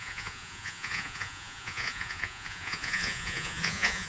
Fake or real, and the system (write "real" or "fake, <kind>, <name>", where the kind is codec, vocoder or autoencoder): fake, vocoder, Vocos